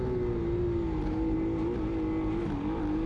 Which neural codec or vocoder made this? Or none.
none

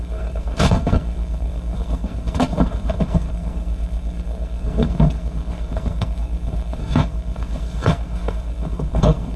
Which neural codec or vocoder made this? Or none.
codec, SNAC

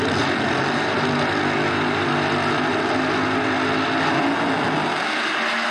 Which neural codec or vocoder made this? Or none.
none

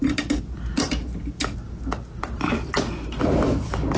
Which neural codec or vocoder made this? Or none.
none